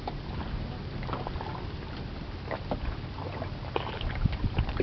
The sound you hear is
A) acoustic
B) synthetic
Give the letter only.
A